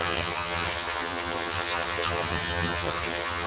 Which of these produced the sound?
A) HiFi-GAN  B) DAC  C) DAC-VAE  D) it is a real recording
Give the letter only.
A